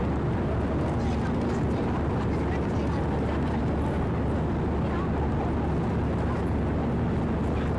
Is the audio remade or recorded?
recorded